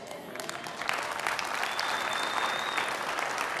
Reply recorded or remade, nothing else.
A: remade